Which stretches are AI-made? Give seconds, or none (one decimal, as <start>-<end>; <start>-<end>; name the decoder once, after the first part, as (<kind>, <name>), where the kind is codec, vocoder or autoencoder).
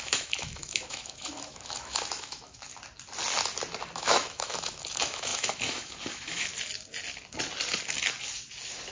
0.0-2.7 (autoencoder, DAC-VAE); 3.9-6.5